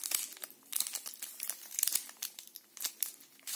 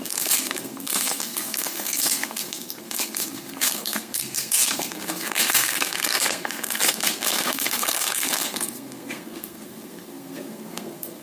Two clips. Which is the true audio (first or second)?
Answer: first